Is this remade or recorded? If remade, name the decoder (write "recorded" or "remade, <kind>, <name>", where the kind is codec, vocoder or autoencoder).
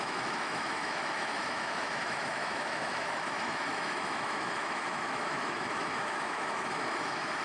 remade, autoencoder, DAC-VAE